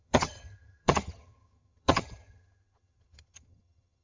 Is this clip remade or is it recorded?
remade